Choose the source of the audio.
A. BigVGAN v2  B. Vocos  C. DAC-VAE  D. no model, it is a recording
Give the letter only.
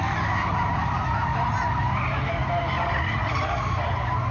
D